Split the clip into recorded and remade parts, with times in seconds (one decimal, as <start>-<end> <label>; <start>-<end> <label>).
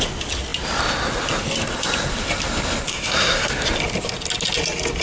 0.0-2.9 recorded; 2.9-3.5 remade; 3.5-5.0 recorded